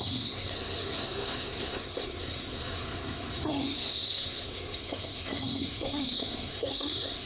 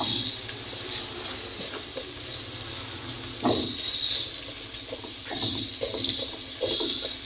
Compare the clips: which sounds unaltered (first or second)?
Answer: second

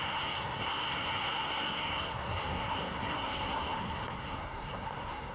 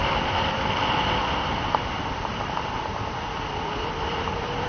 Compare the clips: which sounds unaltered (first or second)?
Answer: second